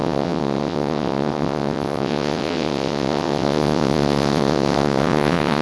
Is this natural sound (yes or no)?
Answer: no